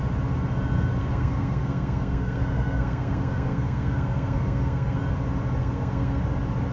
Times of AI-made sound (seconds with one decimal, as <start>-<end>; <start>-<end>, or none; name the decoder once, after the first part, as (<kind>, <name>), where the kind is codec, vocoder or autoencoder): 1.0-5.0 (codec, SNAC); 5.6-6.2